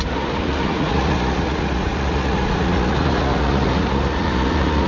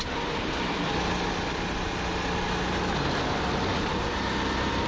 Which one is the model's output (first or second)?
first